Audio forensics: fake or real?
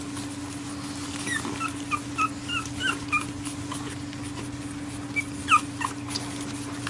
real